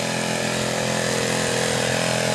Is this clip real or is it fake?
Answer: real